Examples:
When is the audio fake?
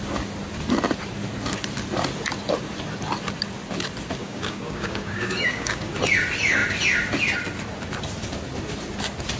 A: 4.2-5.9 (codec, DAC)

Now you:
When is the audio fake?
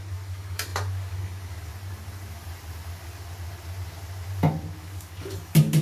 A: 0.0-1.7 (codec, DAC); 4.8-5.8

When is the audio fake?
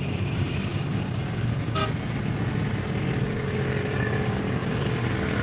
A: 0.0-1.8 (codec, DAC); 3.2-5.4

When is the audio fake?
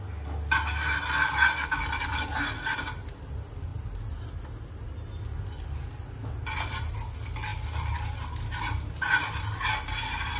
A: none